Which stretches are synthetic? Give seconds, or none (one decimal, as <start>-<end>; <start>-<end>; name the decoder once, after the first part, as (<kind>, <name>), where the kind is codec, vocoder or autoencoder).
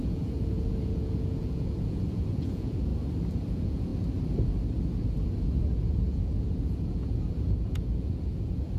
0.0-2.9 (vocoder, Vocos); 3.5-3.9; 5.4-8.8